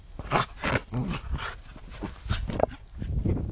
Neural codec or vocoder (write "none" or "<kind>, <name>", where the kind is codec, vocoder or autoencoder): none